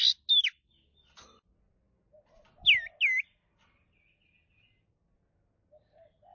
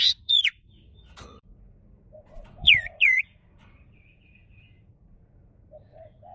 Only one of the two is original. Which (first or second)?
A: first